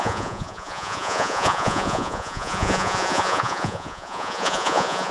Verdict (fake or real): fake